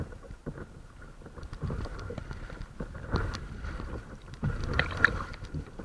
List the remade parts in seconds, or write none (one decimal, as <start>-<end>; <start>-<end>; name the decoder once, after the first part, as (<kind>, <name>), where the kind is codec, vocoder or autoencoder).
0.0-0.4 (vocoder, BigVGAN v2); 3.9-5.8